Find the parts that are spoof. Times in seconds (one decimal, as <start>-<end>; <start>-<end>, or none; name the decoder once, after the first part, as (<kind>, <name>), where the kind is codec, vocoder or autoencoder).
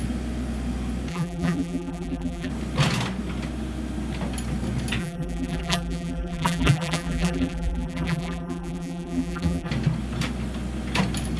1.1-2.5 (vocoder, BigVGAN v2); 5.0-9.7